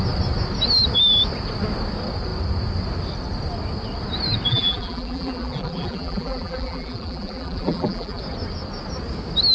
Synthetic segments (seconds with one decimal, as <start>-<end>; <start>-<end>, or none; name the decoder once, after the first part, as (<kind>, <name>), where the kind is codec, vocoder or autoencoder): 4.5-8.2 (vocoder, BigVGAN v2)